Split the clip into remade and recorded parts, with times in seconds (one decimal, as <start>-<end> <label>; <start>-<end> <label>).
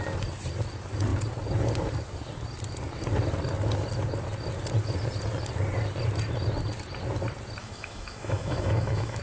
0.0-7.6 recorded; 7.6-9.2 remade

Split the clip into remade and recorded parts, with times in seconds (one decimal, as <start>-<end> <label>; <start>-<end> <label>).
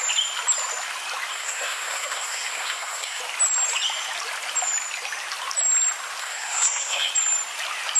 0.0-1.3 recorded; 1.3-3.2 remade; 3.2-6.2 recorded; 6.2-7.1 remade; 7.1-8.0 recorded